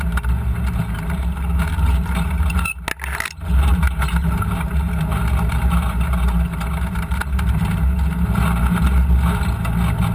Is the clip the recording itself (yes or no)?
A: yes